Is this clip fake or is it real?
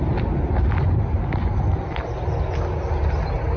real